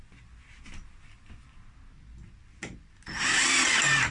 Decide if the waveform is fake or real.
real